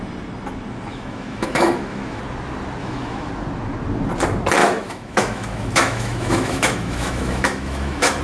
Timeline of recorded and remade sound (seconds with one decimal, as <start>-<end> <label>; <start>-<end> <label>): 0.0-0.9 recorded; 0.9-2.2 remade; 2.2-2.8 recorded; 2.8-3.3 remade; 3.3-4.6 recorded; 4.6-8.2 remade